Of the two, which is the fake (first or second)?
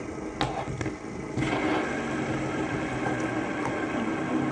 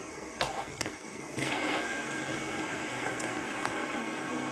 second